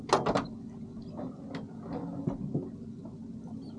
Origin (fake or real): real